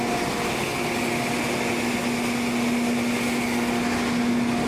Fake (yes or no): no